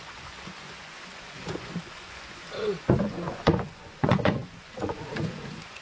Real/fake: fake